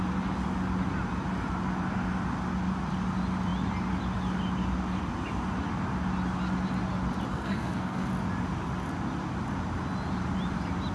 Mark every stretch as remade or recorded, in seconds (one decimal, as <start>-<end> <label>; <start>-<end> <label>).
0.0-7.3 recorded; 7.3-8.1 remade; 8.1-10.9 recorded